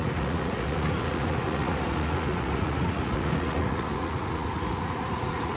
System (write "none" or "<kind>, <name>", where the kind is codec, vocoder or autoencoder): vocoder, Vocos